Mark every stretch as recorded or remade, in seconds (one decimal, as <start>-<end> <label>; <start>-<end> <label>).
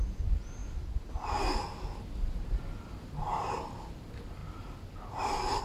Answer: 0.0-5.6 recorded